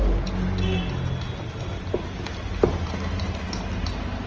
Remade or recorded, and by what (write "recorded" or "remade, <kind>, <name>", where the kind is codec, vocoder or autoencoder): recorded